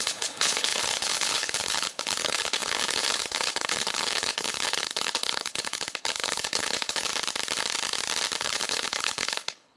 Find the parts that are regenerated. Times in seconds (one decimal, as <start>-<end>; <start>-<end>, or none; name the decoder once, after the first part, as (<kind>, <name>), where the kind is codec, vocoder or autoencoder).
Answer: 0.0-7.1 (codec, HILCodec); 8.4-9.8